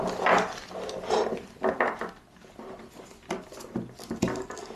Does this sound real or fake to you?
real